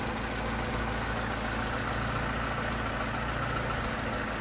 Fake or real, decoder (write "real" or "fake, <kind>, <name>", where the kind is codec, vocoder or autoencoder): real